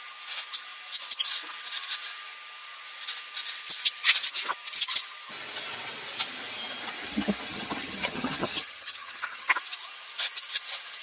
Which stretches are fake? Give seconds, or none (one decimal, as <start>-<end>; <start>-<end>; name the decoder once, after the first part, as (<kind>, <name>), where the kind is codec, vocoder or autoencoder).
7.5-9.5 (vocoder, HiFi-GAN)